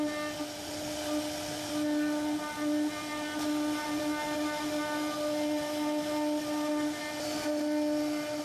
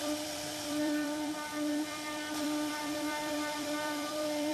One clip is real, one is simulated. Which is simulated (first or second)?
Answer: second